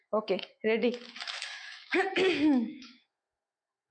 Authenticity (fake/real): fake